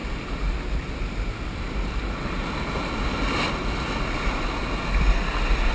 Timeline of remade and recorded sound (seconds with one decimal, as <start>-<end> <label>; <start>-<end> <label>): 0.0-5.7 recorded